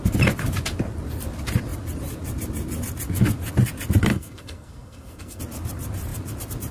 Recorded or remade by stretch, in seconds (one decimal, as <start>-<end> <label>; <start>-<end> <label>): 0.0-4.1 recorded; 4.1-5.4 remade; 5.4-6.7 recorded